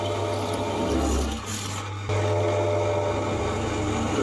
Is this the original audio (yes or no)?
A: yes